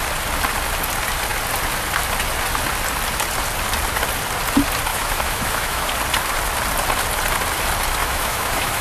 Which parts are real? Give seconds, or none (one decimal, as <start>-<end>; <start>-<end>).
0.0-4.9; 5.9-8.0